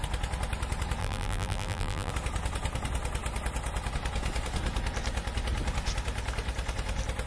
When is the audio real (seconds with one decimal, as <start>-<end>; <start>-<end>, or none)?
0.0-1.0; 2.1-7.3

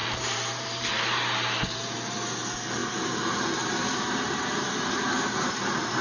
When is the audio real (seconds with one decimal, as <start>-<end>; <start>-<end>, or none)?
2.3-2.8

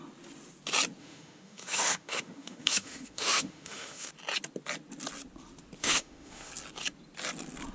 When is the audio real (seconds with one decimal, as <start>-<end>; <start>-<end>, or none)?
0.0-1.0; 4.1-5.8; 6.5-7.7